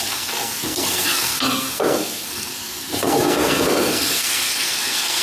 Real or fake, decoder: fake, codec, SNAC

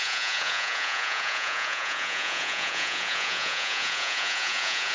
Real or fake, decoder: fake, vocoder, Vocos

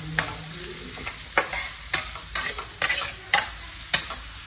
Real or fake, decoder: real